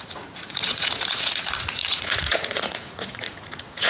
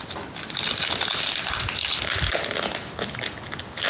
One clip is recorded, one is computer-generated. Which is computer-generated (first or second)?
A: first